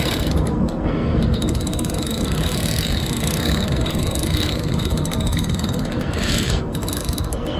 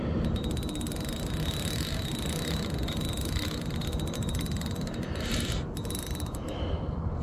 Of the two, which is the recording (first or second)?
second